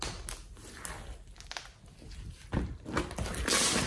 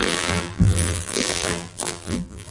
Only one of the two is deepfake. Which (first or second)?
second